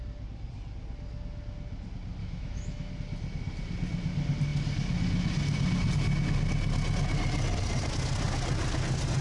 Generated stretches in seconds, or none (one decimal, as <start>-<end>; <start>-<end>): 2.2-2.9